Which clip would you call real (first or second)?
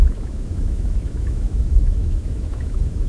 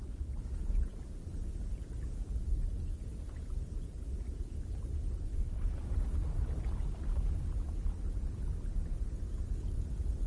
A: second